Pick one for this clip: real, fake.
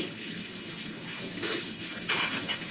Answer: fake